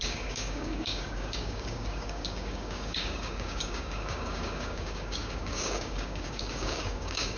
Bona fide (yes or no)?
no